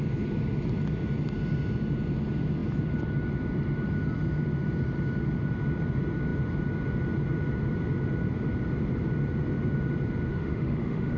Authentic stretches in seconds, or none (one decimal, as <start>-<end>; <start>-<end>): 0.0-10.3